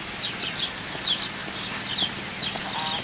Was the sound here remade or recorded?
recorded